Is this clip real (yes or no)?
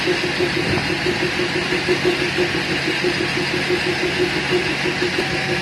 yes